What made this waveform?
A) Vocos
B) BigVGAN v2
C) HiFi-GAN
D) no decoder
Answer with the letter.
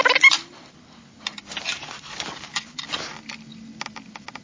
D